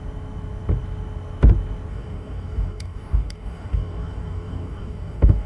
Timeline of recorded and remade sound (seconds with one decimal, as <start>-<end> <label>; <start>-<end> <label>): 0.0-1.9 recorded; 1.9-5.5 remade